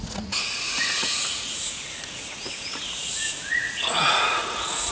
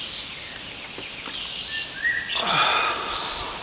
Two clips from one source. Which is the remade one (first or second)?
first